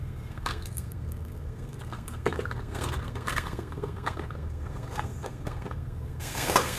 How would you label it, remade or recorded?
remade